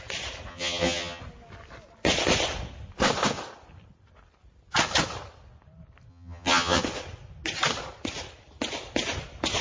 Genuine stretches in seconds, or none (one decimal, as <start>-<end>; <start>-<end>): 0.0-0.5; 1.2-6.1; 6.8-9.6